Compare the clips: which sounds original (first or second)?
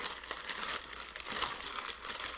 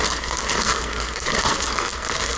first